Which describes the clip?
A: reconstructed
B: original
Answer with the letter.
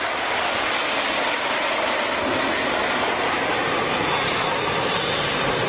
B